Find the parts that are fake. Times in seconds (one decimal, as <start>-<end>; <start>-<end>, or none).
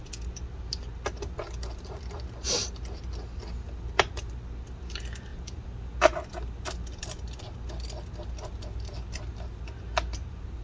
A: none